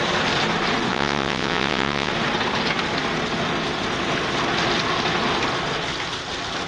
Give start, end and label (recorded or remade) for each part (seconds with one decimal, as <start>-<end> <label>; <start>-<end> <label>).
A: 0.0-0.9 recorded; 0.9-2.1 remade; 2.1-6.7 recorded